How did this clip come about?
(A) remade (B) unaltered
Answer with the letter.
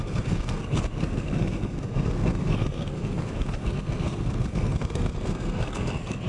A